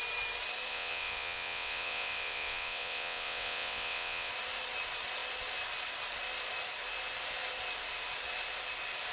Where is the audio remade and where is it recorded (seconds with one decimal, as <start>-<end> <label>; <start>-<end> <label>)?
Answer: 0.0-0.7 recorded; 0.7-4.3 remade; 4.3-9.1 recorded

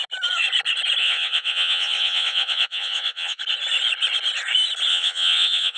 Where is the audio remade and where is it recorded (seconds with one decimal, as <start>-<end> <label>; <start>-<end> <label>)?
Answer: 0.0-1.0 recorded; 1.0-3.4 remade; 3.4-4.9 recorded; 4.9-5.8 remade

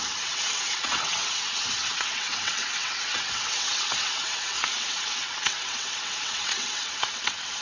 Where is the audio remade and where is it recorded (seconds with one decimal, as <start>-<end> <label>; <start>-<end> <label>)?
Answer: 0.0-7.6 remade

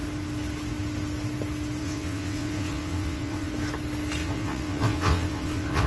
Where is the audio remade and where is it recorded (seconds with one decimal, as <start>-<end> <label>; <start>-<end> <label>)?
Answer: 0.0-1.8 recorded; 1.8-3.5 remade; 3.5-4.2 recorded; 4.2-5.9 remade

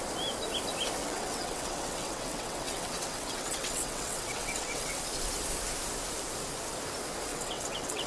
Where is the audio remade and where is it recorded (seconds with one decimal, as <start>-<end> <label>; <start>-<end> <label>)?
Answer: 0.0-1.0 recorded; 1.0-5.0 remade; 5.0-7.3 recorded; 7.3-8.1 remade

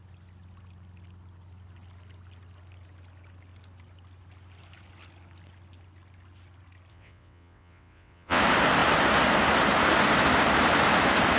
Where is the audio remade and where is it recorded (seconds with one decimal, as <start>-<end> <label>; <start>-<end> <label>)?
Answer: 0.0-6.9 recorded; 6.9-8.4 remade; 8.4-11.4 recorded

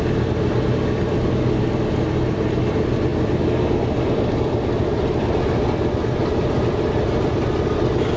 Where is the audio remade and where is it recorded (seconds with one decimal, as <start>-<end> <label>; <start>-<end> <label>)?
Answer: 0.0-8.2 recorded

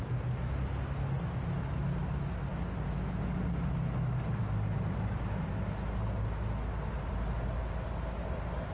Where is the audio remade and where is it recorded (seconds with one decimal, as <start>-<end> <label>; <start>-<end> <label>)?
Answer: 0.0-8.7 recorded